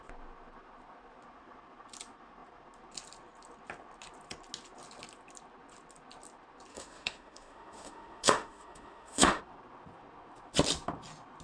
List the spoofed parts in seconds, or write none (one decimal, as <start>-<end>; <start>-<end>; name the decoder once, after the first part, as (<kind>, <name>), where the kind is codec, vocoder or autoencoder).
6.7-9.4 (autoencoder, DAC-VAE)